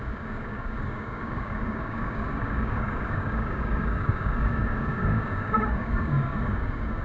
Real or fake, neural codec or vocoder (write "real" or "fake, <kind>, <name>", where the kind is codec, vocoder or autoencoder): fake, codec, DAC